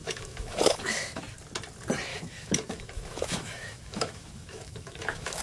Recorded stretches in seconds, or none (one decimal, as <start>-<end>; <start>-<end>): 1.2-2.1